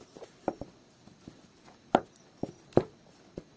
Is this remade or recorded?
recorded